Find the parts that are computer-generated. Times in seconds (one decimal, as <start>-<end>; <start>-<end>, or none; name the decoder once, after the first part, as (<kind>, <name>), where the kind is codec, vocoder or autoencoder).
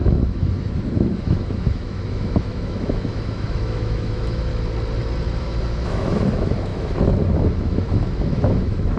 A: 0.0-4.5 (autoencoder, DAC-VAE); 5.4-9.0